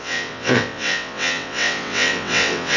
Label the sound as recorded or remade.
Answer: remade